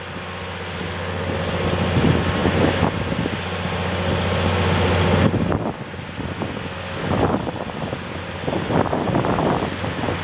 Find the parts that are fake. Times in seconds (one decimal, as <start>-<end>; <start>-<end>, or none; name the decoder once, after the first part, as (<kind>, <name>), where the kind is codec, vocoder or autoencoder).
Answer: none

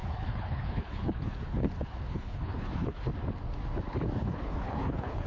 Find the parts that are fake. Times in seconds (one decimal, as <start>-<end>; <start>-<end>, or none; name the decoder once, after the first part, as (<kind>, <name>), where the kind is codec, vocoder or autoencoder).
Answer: 0.0-3.1 (codec, HILCodec); 4.2-5.3

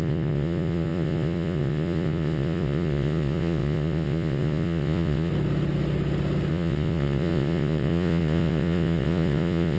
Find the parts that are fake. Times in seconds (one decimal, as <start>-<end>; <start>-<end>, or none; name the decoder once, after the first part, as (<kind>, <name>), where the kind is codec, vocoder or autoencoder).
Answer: 0.0-5.3 (vocoder, Vocos); 6.5-9.8

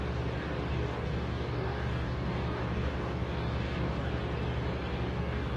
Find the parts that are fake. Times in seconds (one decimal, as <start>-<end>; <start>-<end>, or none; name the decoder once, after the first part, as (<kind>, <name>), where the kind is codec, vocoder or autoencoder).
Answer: 0.7-4.1 (codec, DAC); 4.9-5.6